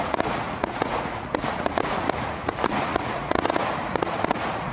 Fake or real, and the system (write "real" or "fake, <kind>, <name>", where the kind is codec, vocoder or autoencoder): fake, vocoder, Vocos